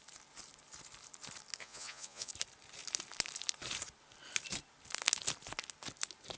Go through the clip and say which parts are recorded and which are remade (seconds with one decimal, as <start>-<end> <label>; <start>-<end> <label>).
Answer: 0.0-1.6 recorded; 1.6-2.3 remade; 2.3-6.4 recorded